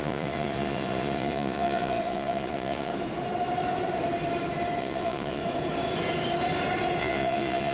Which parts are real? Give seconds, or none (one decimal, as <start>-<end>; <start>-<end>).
2.9-4.8; 5.4-7.0